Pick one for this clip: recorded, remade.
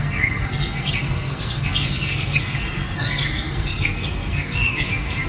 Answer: remade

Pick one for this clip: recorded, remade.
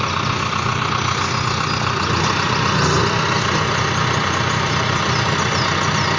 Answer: recorded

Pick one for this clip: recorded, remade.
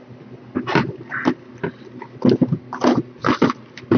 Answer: recorded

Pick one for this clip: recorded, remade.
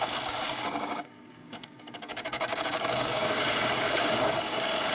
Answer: remade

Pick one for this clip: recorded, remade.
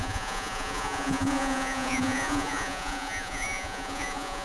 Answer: remade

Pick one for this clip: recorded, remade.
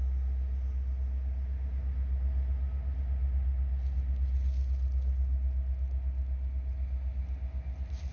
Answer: recorded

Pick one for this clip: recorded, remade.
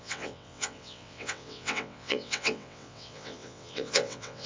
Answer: remade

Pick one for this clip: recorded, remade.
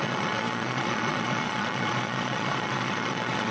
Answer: remade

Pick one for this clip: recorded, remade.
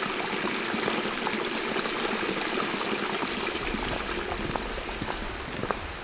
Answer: recorded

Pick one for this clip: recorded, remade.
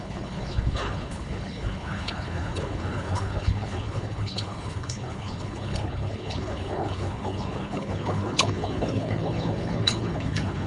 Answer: remade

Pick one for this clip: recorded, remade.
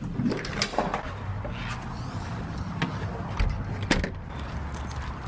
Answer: recorded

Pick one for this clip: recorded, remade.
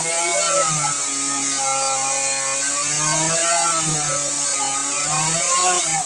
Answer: recorded